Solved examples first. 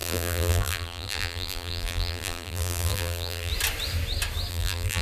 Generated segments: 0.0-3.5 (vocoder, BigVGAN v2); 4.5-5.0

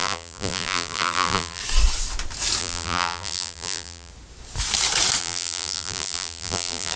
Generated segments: 0.0-1.6 (vocoder, BigVGAN v2); 2.6-4.1; 5.2-7.0

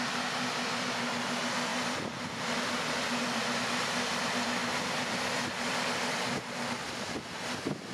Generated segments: 1.7-3.4 (vocoder, BigVGAN v2); 4.6-6.3

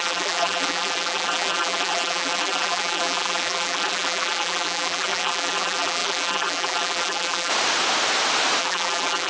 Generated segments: 0.0-7.5 (vocoder, BigVGAN v2); 8.6-9.3